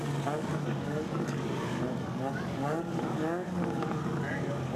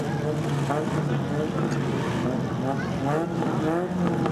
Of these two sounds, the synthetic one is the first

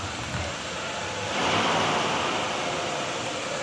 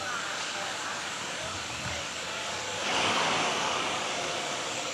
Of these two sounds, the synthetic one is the second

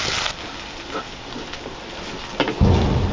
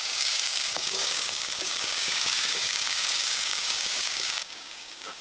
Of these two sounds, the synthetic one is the second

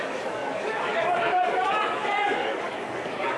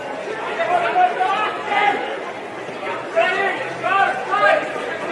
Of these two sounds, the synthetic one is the first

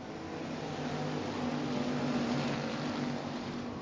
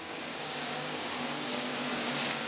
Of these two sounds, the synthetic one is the second